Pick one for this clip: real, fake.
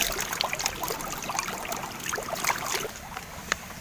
real